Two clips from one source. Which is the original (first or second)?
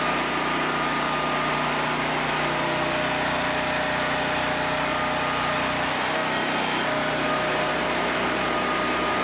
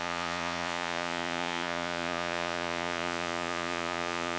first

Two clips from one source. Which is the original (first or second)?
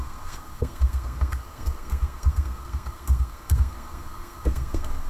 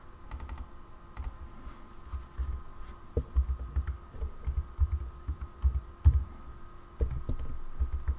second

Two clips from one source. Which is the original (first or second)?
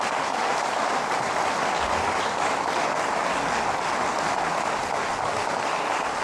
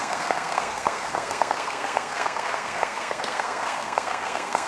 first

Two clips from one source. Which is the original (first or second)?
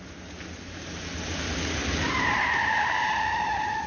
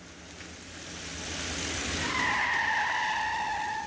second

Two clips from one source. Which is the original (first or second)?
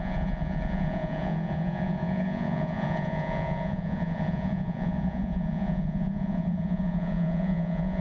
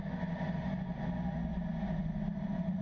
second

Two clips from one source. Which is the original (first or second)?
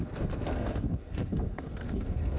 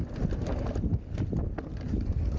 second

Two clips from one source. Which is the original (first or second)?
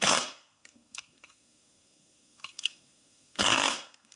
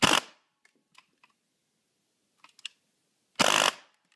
second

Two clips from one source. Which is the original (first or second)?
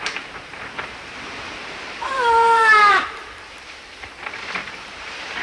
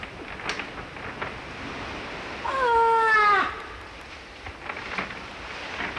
second